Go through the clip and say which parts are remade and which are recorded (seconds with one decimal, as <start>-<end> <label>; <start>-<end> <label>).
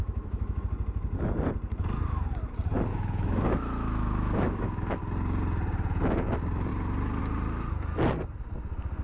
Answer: 0.0-0.6 remade; 0.6-2.9 recorded; 2.9-5.0 remade; 5.0-9.0 recorded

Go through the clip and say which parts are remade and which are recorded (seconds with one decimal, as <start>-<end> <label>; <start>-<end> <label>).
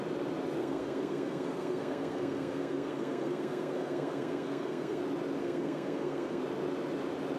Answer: 0.0-0.6 recorded; 0.6-5.0 remade; 5.0-5.4 recorded; 5.4-6.4 remade; 6.4-7.4 recorded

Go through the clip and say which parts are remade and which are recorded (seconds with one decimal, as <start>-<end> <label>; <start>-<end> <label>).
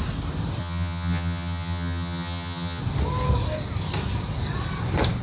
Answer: 0.0-0.6 recorded; 0.6-2.8 remade; 2.8-5.2 recorded